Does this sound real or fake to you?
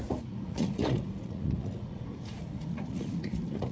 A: fake